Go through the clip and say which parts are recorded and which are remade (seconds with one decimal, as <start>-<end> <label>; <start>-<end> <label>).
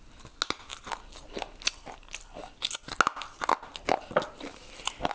0.0-5.1 recorded